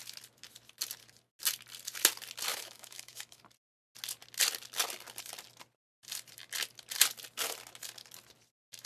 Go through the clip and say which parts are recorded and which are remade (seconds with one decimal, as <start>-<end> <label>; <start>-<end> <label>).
0.0-2.5 recorded; 2.5-3.4 remade; 3.4-8.9 recorded